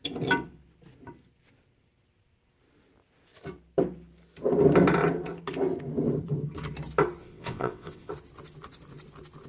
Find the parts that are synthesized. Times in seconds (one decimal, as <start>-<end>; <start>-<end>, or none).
7.2-8.1